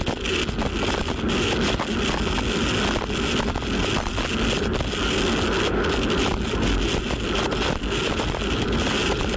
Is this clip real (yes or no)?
yes